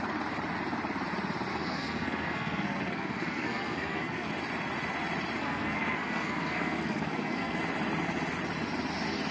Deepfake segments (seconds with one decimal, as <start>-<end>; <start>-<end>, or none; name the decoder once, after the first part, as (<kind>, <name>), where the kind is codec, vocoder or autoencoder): 1.5-4.3 (codec, SNAC); 5.4-7.6